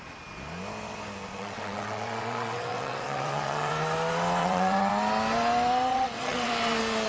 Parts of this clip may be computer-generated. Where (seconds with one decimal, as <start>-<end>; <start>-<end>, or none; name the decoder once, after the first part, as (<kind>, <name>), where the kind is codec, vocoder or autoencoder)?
1.3-3.7 (vocoder, WaveNeXt); 4.4-4.9; 5.9-6.5